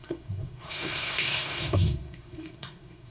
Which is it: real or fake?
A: fake